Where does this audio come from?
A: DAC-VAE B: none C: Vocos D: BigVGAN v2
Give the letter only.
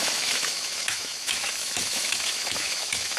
A